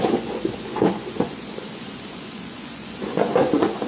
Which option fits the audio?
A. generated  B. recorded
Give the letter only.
A